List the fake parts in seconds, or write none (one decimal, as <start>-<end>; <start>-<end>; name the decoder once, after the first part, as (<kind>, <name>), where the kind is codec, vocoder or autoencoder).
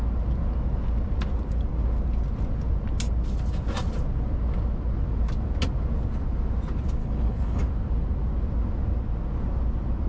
7.0-7.6 (codec, HILCodec)